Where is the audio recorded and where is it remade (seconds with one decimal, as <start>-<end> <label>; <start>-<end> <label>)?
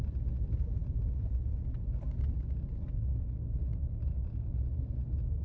0.0-5.4 recorded